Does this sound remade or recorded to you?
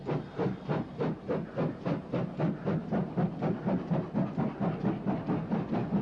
recorded